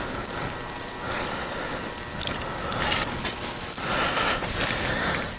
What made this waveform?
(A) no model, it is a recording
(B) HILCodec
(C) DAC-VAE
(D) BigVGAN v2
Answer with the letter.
A